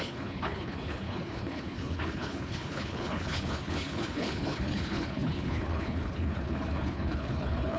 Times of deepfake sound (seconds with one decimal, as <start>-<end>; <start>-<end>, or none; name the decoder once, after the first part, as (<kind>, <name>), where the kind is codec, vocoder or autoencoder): 0.0-7.8 (codec, HILCodec)